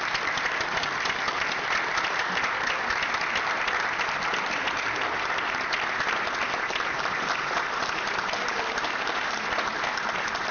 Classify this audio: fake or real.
real